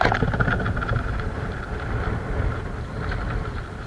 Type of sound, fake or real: real